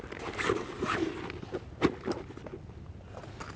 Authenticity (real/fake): real